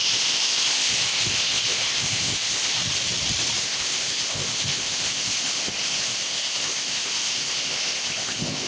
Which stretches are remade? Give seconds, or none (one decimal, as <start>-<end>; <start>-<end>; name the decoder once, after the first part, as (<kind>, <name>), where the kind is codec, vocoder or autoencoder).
0.0-2.8 (codec, ZipCodec); 3.6-8.7